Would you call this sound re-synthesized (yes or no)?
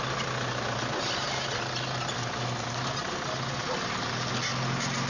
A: no